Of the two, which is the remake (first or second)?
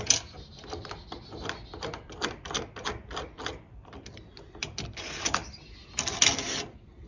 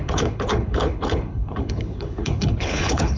second